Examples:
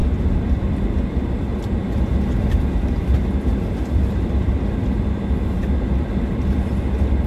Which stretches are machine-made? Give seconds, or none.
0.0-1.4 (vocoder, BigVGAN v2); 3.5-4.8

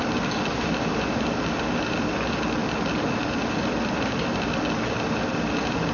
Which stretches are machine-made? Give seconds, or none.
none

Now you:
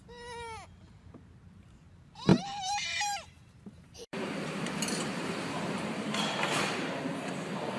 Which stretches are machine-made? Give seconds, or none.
2.3-7.0 (vocoder, BigVGAN v2)

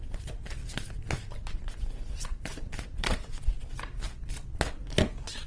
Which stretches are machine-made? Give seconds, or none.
0.6-3.8 (vocoder, BigVGAN v2)

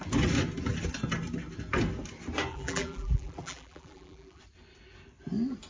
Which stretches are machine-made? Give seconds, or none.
2.5-4.4 (vocoder, BigVGAN v2)

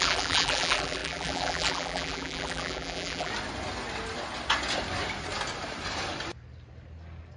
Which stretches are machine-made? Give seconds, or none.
0.0-3.3 (vocoder, BigVGAN v2)

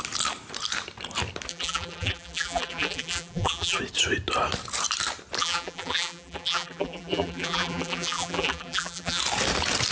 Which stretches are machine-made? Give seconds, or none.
1.5-3.8 (vocoder, BigVGAN v2); 5.4-9.2

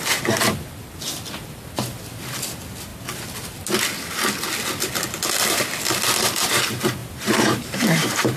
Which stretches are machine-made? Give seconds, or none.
7.0-8.4 (vocoder, BigVGAN v2)